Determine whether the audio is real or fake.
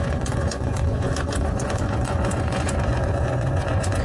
fake